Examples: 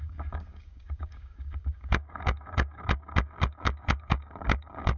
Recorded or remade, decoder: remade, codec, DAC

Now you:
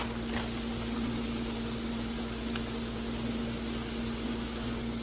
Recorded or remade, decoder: recorded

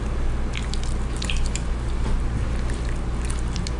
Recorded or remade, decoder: recorded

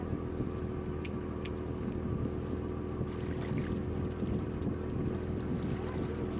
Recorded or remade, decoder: recorded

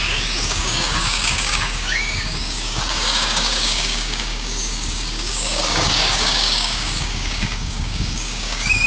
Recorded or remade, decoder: remade, codec, DAC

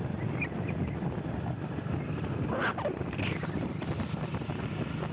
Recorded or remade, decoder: recorded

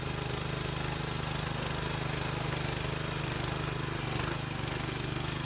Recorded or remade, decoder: recorded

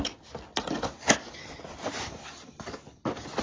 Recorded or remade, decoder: recorded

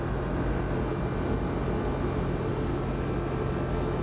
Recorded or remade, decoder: recorded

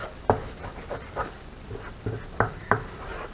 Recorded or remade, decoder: recorded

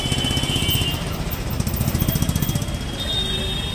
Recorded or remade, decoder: recorded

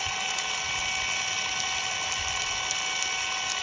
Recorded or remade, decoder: recorded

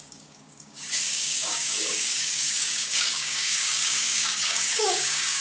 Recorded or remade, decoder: remade, codec, DAC